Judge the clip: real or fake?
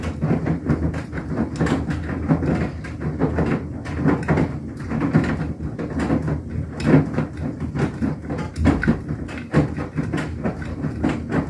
real